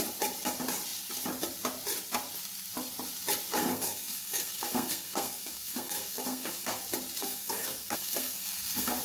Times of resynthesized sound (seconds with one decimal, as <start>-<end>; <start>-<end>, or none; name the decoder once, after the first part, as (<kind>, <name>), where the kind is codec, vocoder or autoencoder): 3.6-6.8 (codec, SNAC); 7.2-9.0